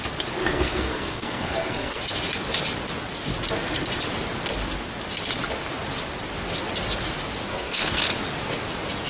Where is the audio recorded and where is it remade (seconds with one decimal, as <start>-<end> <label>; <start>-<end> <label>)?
0.0-0.4 recorded; 0.4-2.0 remade; 2.0-7.5 recorded; 7.5-8.0 remade; 8.0-9.1 recorded